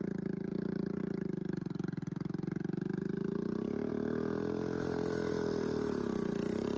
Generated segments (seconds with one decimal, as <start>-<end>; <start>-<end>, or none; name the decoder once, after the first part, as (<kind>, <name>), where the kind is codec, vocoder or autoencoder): none